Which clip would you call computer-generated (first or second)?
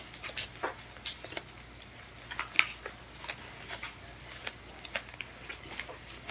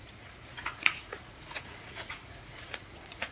second